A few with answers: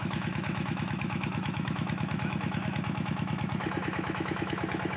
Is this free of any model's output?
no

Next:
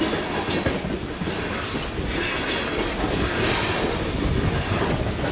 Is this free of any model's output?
yes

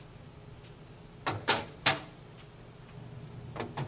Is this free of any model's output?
yes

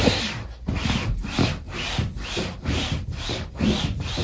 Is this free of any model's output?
no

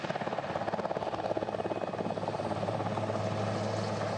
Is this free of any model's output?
yes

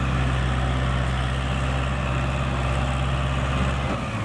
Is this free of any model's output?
yes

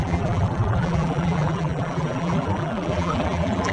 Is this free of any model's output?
no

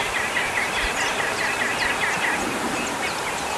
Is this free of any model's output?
yes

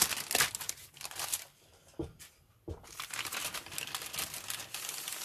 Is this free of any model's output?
yes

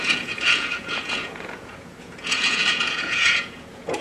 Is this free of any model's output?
no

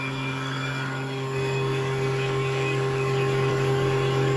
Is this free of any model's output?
no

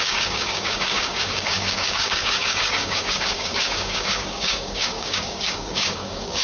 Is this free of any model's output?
no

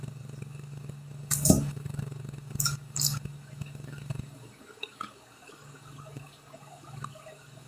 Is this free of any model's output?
no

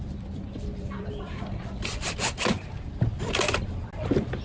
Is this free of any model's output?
yes